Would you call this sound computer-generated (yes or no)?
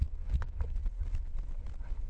no